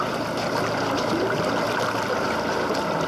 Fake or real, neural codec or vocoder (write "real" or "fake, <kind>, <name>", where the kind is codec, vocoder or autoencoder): real